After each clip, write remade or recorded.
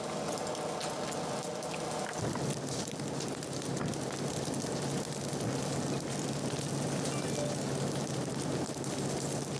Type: recorded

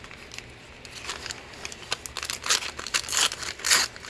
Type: recorded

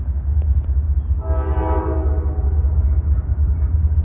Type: recorded